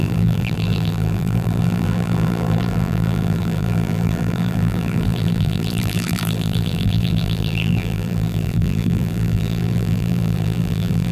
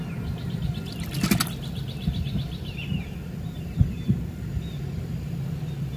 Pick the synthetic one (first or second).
first